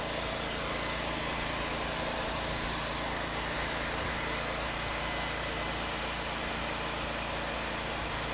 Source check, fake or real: real